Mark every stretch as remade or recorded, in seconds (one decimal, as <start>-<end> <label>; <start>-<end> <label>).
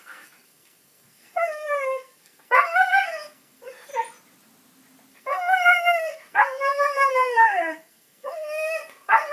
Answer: 0.0-3.9 remade; 3.9-5.1 recorded; 5.1-9.3 remade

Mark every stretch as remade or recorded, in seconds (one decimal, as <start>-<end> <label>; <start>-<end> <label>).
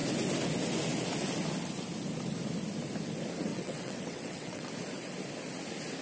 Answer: 0.0-3.5 recorded; 3.5-4.7 remade; 4.7-6.0 recorded